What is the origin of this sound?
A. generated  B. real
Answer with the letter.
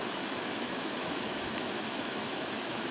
A